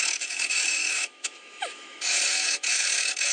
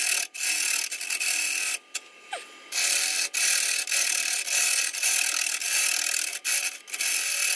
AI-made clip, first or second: first